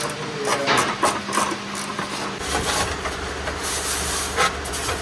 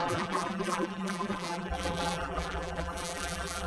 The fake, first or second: second